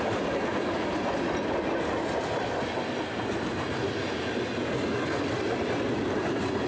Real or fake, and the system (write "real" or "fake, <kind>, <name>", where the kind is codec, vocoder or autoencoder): real